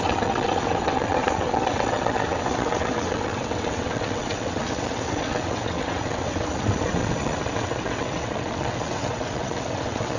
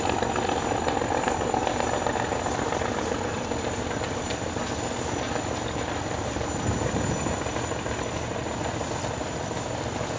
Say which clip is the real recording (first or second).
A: second